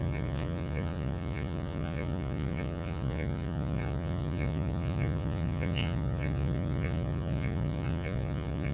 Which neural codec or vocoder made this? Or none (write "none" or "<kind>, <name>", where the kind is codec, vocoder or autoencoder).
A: vocoder, Vocos